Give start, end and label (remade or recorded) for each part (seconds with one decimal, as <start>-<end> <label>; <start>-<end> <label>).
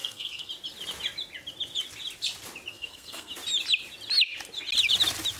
0.0-0.5 remade; 0.5-2.7 recorded; 2.7-3.3 remade; 3.3-5.4 recorded